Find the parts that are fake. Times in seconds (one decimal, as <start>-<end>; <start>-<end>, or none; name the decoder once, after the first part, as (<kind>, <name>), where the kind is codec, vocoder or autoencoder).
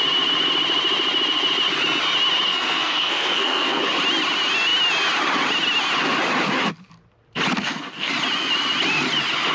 2.5-3.8 (codec, SNAC); 7.6-8.1